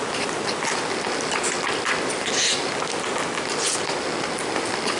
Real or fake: real